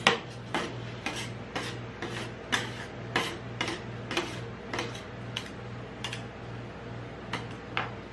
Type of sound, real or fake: real